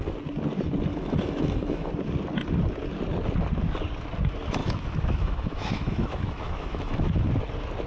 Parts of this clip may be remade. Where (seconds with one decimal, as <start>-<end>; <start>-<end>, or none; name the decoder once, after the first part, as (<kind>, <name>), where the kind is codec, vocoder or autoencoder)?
0.9-1.9 (autoencoder, DAC-VAE); 4.6-7.3